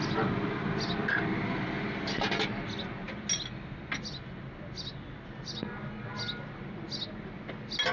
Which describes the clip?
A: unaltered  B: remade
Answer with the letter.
A